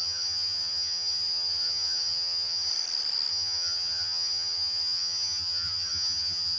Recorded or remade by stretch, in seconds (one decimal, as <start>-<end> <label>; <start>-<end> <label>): 0.0-2.7 remade; 2.7-3.3 recorded; 3.3-6.6 remade